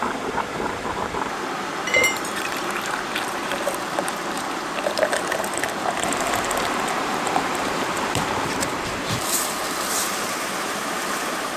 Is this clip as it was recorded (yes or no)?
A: no